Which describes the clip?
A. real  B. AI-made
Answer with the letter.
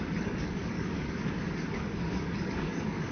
B